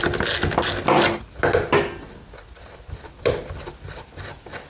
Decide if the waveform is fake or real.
real